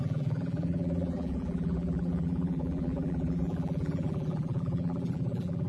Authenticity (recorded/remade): remade